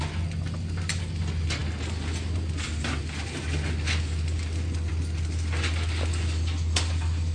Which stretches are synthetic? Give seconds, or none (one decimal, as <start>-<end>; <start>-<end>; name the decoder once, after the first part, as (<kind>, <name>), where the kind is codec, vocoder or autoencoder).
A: none